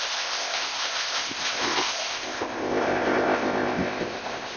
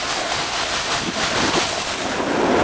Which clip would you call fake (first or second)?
first